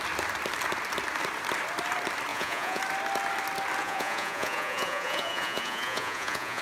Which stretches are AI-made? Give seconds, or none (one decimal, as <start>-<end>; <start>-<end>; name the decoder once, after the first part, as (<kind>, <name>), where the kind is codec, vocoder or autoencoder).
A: 2.3-2.8 (vocoder, Vocos); 3.8-6.6